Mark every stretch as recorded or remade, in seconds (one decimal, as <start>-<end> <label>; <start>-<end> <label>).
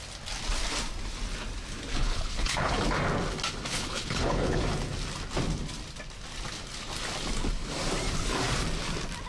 0.0-1.9 recorded; 1.9-2.8 remade; 2.8-3.7 recorded; 3.7-4.6 remade; 4.6-9.3 recorded